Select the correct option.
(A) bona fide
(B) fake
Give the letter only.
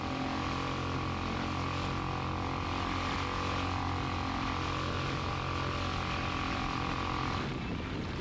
A